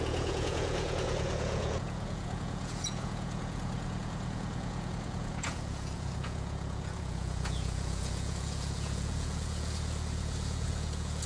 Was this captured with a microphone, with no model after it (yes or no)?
no